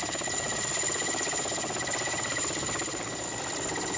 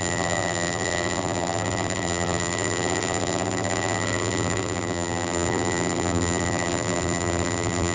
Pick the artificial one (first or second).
second